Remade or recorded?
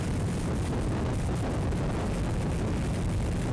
recorded